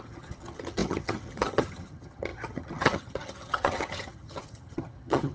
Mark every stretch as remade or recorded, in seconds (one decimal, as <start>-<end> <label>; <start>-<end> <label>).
0.0-5.3 remade